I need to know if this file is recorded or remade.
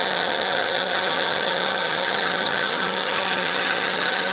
remade